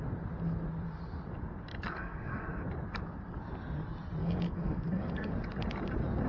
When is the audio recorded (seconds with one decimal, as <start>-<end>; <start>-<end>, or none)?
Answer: 0.0-1.7; 2.4-4.2; 5.3-6.3